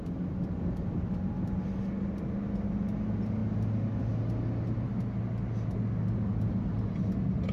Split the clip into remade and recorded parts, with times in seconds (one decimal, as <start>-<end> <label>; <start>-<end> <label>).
0.0-7.5 recorded